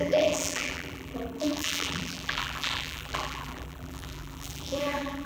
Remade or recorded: remade